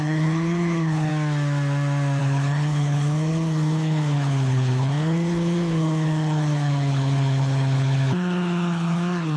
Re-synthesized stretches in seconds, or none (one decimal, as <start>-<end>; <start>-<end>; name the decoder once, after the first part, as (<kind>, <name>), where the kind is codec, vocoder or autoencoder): 0.0-1.1 (codec, HILCodec); 2.2-9.4